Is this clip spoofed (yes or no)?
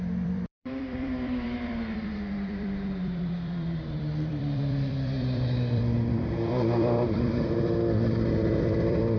yes